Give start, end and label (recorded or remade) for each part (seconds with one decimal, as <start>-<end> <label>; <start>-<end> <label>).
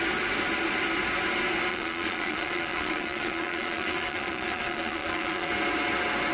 0.0-1.7 recorded; 1.7-5.5 remade; 5.5-6.3 recorded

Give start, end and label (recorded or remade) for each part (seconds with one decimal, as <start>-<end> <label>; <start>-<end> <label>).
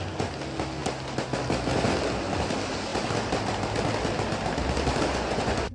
0.0-5.1 recorded; 5.1-5.7 remade